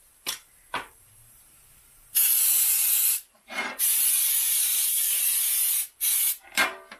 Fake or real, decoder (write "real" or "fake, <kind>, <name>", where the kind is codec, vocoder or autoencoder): fake, vocoder, BigVGAN v2